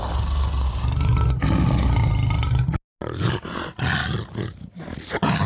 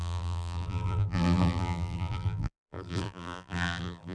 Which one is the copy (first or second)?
second